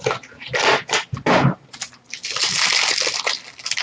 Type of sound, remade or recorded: recorded